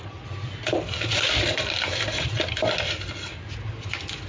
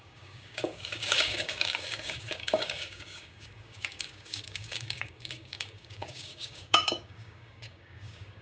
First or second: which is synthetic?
second